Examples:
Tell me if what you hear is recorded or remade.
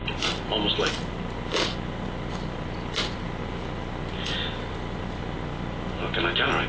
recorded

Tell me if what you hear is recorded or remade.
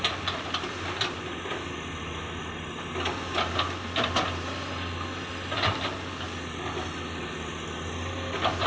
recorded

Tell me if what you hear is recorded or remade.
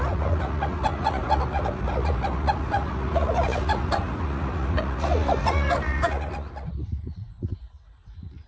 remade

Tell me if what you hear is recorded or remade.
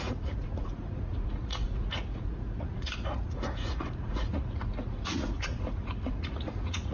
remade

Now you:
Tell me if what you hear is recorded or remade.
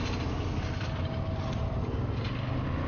recorded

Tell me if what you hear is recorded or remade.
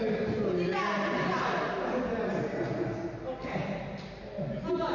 recorded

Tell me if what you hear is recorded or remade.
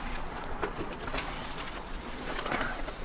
remade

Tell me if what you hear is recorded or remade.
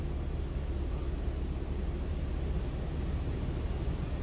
recorded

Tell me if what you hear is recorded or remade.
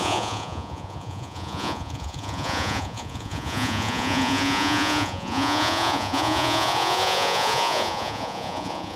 remade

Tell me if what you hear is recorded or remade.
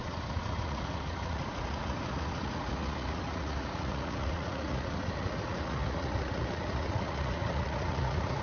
remade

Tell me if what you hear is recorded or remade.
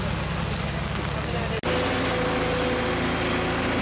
recorded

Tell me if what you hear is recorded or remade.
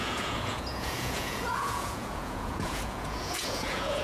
remade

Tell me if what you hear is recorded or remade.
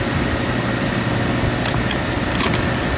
recorded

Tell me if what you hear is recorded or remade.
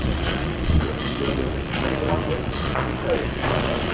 remade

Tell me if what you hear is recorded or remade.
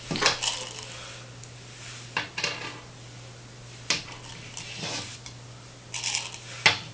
recorded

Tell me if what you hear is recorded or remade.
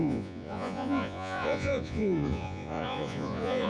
remade